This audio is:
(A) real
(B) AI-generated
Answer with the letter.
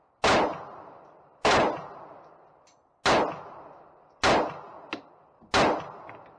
A